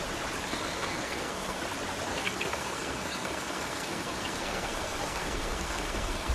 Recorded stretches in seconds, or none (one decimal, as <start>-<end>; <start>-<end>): 0.0-0.5; 1.6-2.1